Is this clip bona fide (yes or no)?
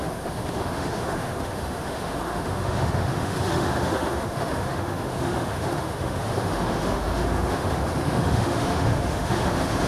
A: no